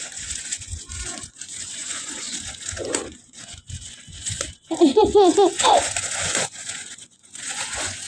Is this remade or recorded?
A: remade